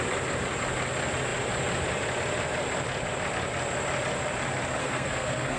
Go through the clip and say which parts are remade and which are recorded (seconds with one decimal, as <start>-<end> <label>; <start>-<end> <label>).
0.0-4.8 recorded; 4.8-5.6 remade